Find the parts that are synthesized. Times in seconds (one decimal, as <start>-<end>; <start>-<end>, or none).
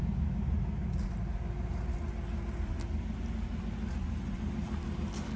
none